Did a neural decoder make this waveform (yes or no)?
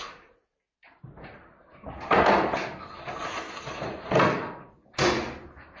no